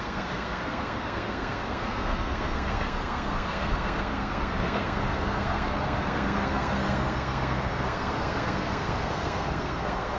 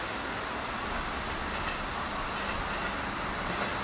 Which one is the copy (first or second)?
first